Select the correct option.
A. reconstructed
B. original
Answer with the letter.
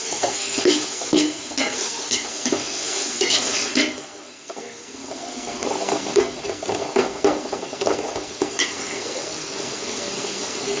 A